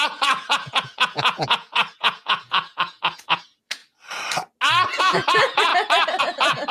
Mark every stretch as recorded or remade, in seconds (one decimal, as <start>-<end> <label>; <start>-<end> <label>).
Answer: 0.0-3.8 remade; 3.8-5.0 recorded; 5.0-5.7 remade; 5.7-6.2 recorded; 6.2-6.7 remade